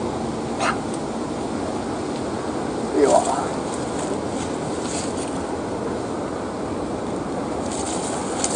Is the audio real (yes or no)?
yes